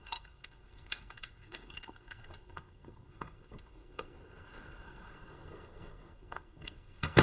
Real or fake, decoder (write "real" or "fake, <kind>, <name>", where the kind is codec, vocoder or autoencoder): fake, codec, SNAC